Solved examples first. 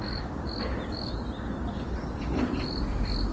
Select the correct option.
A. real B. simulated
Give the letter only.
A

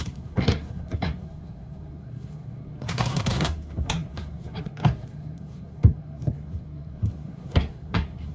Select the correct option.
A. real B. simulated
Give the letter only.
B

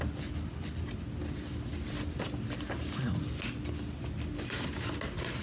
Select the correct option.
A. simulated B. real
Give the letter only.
B